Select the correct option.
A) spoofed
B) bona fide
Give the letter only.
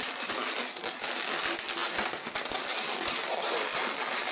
B